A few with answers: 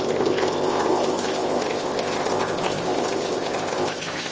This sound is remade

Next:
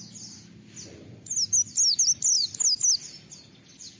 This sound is recorded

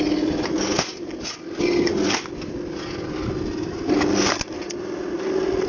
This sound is recorded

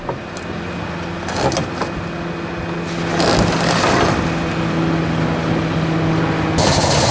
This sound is recorded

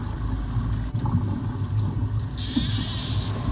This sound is recorded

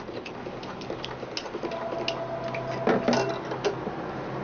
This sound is recorded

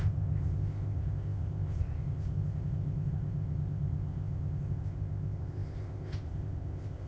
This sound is remade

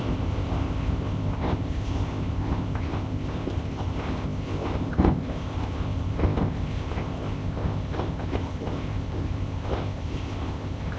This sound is remade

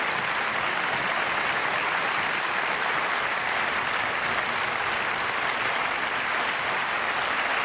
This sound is recorded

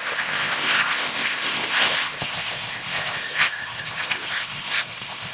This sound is remade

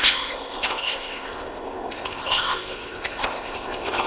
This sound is remade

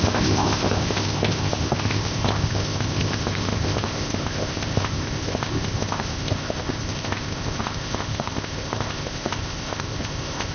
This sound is remade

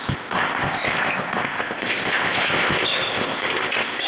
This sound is remade